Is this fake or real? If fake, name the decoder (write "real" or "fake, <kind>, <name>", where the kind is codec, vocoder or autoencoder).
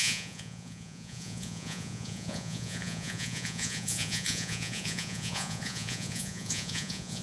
fake, vocoder, Vocos